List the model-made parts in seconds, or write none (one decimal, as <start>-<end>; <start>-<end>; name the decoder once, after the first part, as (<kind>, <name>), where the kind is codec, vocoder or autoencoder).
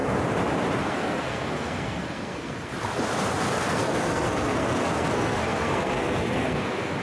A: 0.8-2.7 (codec, SNAC); 3.4-7.0